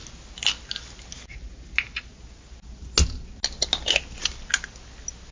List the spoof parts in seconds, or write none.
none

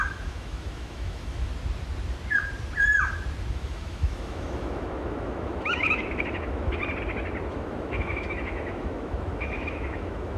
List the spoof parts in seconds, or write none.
0.0-1.5; 3.5-6.8; 7.5-10.4

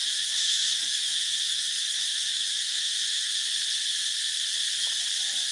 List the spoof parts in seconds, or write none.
0.0-3.3